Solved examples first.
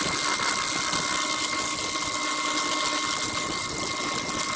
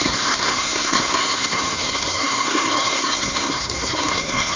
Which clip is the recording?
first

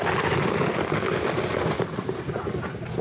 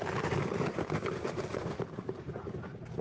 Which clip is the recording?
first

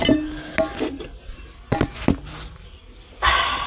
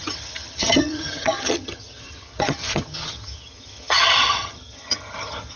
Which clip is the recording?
first